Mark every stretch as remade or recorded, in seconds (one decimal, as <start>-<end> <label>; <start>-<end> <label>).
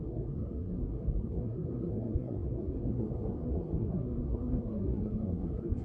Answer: 0.0-5.8 remade